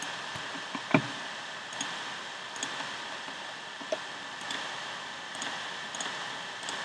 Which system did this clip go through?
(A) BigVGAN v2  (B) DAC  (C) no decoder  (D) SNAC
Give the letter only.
C